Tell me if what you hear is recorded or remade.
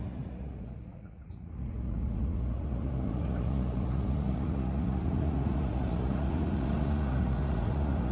remade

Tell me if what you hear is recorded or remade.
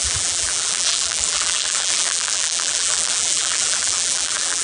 remade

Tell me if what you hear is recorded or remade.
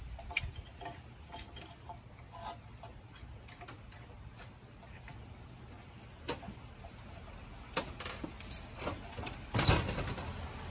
recorded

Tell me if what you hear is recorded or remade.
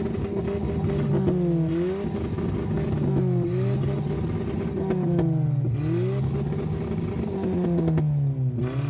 recorded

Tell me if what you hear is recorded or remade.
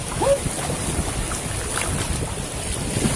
recorded